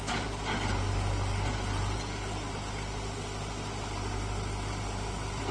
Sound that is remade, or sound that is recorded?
recorded